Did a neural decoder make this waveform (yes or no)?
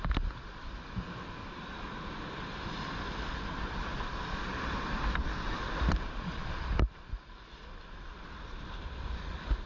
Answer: no